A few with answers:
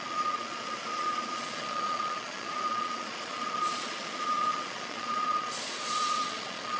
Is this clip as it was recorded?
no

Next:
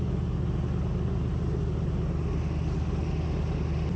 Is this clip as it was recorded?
yes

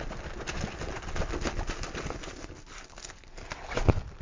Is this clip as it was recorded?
yes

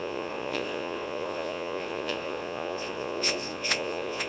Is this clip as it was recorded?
no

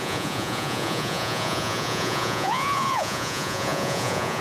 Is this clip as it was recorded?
no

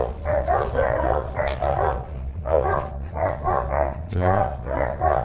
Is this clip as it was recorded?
no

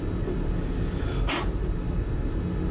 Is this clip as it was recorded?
yes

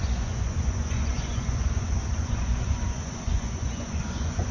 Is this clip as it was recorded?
no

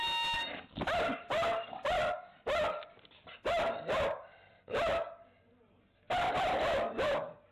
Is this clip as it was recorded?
yes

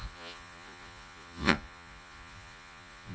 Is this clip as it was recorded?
no